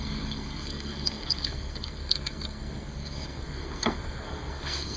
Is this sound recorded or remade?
remade